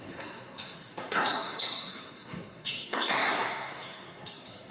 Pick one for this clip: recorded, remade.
remade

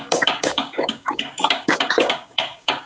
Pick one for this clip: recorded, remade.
remade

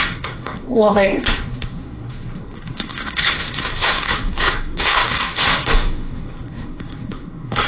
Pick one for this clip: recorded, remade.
remade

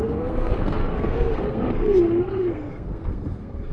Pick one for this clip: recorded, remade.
remade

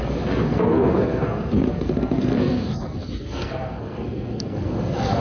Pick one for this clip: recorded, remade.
remade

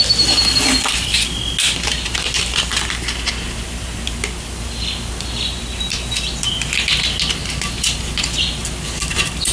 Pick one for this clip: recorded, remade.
recorded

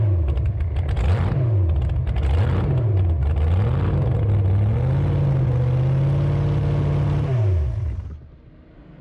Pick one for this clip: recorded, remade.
recorded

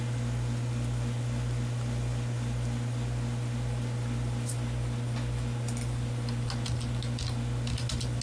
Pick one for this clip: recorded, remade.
recorded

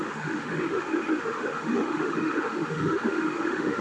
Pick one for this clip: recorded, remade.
remade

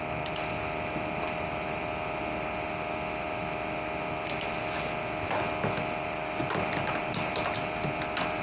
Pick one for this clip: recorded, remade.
recorded